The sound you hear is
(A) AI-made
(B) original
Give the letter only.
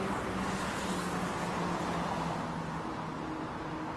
B